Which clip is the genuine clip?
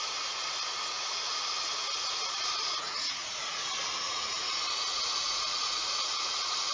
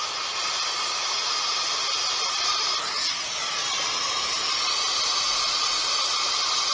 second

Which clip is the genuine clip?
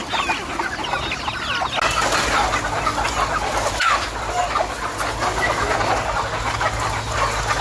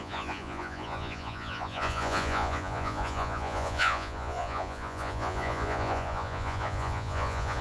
first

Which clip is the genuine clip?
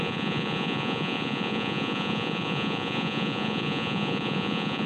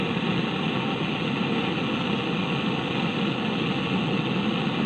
second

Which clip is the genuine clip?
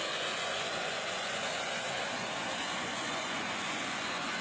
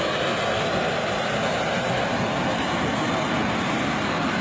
second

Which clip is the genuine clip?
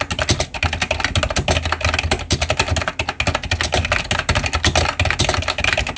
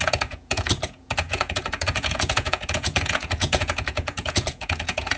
first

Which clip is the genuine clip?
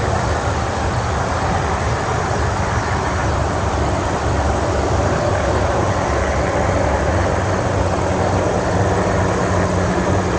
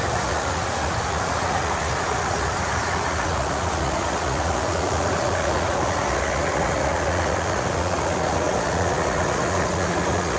first